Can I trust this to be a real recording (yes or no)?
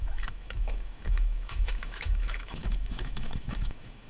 no